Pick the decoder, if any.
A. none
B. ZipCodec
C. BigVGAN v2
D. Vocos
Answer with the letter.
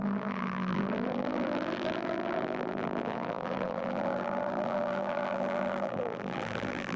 C